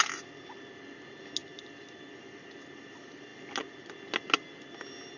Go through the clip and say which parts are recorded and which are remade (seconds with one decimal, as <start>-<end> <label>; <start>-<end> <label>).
0.0-5.2 recorded